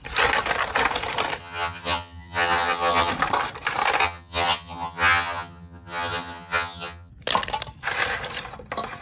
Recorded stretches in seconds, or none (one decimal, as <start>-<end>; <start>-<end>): 0.0-1.4; 3.1-4.0; 7.1-9.0

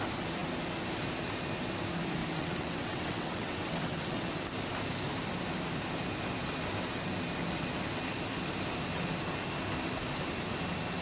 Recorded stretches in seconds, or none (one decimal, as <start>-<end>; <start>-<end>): 0.0-2.2; 4.2-11.0

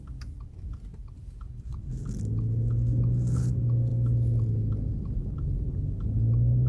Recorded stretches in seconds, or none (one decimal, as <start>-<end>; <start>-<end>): 0.0-0.9; 1.9-6.7

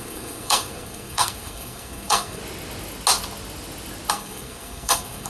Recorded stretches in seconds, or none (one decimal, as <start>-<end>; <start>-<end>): 2.4-4.1

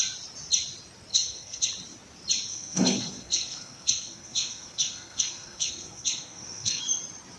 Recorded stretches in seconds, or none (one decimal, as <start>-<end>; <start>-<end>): 0.0-1.1; 1.7-2.5; 6.8-7.4

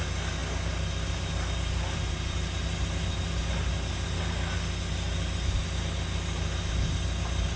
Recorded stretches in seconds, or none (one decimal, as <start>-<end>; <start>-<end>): 0.0-7.6

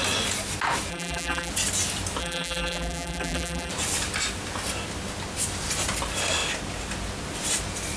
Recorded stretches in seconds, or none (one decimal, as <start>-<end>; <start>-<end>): 0.0-0.9; 1.5-2.2; 3.7-8.0